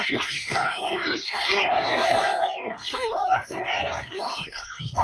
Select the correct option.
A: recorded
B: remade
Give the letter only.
B